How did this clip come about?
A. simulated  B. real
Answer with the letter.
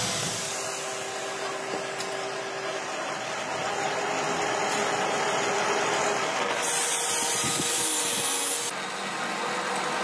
B